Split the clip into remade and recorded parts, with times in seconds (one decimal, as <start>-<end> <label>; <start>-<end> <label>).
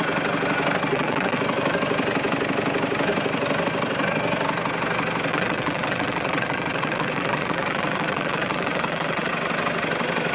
0.0-0.9 recorded; 0.9-1.4 remade; 1.4-5.3 recorded; 5.3-9.3 remade; 9.3-10.3 recorded